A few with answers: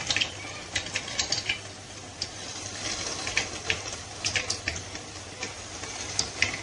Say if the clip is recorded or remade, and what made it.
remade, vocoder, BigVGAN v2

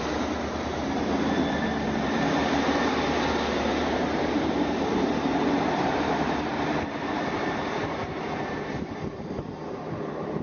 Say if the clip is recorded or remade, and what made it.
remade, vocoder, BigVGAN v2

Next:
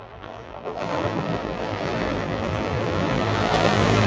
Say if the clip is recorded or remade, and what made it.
remade, vocoder, BigVGAN v2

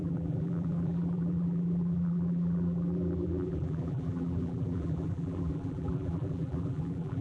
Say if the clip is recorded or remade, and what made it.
remade, vocoder, BigVGAN v2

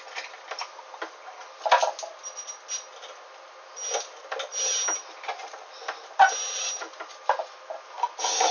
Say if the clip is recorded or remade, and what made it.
recorded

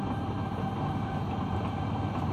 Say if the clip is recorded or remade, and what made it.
recorded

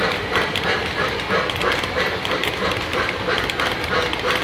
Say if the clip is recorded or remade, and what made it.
recorded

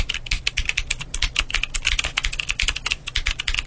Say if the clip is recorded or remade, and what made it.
recorded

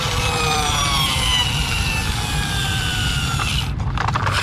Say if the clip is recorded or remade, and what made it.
remade, vocoder, BigVGAN v2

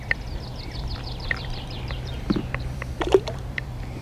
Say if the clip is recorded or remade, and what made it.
remade, vocoder, BigVGAN v2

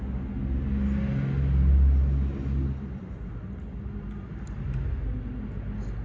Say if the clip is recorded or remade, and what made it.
recorded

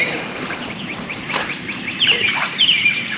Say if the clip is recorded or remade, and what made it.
remade, vocoder, BigVGAN v2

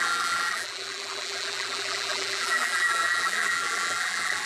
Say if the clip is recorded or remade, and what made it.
remade, vocoder, BigVGAN v2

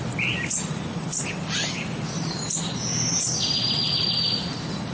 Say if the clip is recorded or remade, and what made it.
remade, vocoder, BigVGAN v2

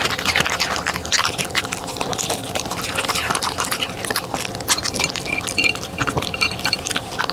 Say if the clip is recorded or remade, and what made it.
recorded